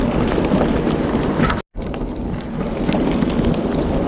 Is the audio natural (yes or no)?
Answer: yes